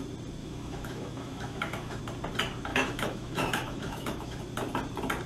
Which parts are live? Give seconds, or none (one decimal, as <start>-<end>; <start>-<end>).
0.0-0.4; 2.0-2.7; 4.4-5.3